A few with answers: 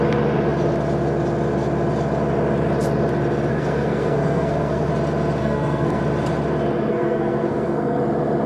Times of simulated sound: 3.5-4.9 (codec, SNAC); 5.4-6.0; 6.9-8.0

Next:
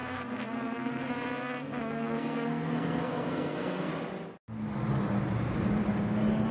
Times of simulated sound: 0.0-3.9 (codec, SNAC)

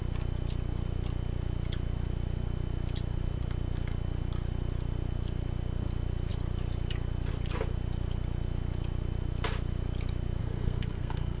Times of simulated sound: 10.4-11.4 (codec, SNAC)

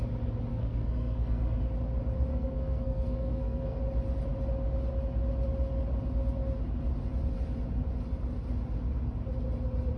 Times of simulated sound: 0.5-1.6 (codec, SNAC); 2.3-3.8

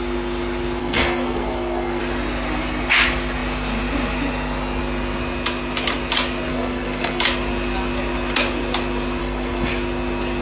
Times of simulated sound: 0.8-2.0 (codec, SNAC); 6.5-7.2; 9.2-9.7

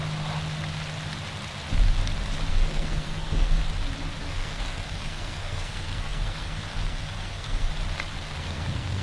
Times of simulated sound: 2.5-3.6 (codec, SNAC); 4.2-7.7; 8.4-9.0

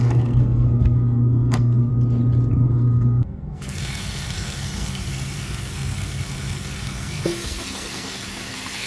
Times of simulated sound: 0.0-1.9 (codec, SNAC); 2.5-8.9